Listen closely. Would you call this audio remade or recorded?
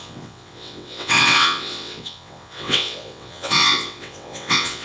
remade